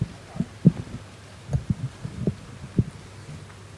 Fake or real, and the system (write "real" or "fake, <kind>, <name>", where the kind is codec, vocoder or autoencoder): real